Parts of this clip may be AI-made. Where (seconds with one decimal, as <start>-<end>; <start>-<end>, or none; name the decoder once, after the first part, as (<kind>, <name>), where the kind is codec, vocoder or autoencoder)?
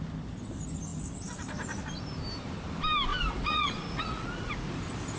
3.1-4.7 (vocoder, Vocos)